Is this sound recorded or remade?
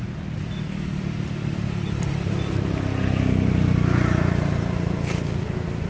recorded